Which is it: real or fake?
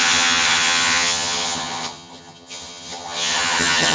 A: fake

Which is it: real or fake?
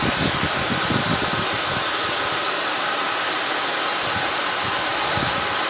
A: real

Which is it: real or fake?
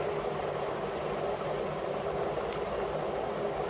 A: real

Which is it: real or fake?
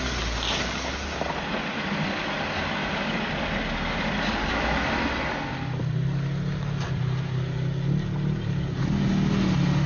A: real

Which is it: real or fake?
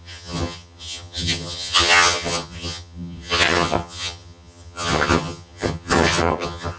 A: fake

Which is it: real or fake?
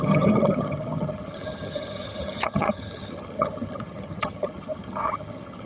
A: fake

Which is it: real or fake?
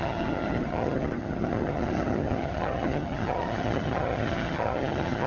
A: fake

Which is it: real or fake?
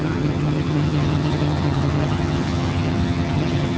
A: fake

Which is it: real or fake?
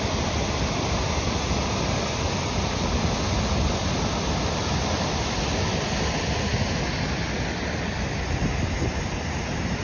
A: real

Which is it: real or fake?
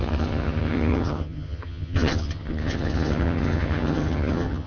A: fake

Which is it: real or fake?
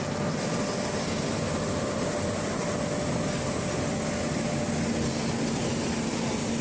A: real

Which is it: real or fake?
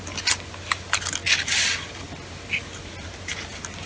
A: real